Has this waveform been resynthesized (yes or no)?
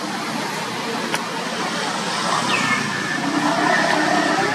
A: no